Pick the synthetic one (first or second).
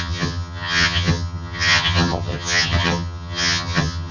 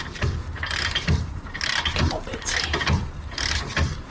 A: first